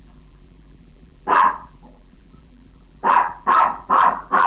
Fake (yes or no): yes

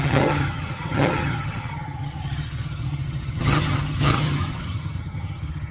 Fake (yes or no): yes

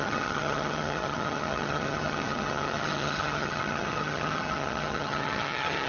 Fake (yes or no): yes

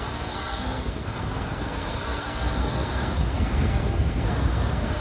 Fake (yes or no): yes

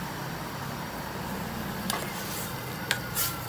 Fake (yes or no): no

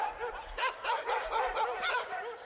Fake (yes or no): no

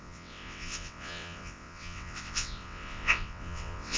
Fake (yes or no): yes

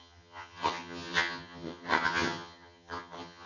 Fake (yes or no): yes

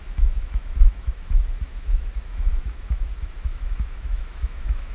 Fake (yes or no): yes